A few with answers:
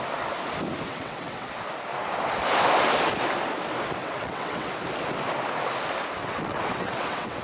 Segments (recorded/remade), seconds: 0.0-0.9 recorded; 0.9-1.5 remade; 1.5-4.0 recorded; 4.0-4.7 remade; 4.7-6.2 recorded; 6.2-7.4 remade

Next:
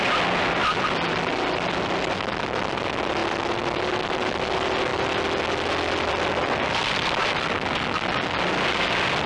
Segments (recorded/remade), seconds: 0.0-9.3 recorded